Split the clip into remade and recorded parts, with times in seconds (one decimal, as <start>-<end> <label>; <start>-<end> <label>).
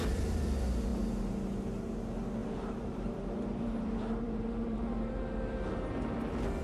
0.0-2.4 recorded; 2.4-5.2 remade; 5.2-6.6 recorded